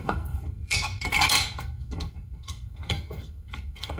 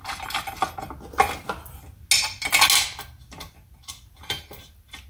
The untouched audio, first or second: second